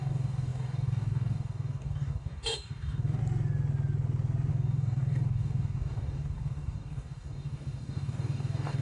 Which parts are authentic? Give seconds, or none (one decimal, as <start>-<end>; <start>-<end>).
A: 3.2-4.5